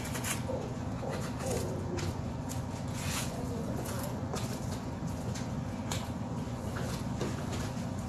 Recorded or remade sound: remade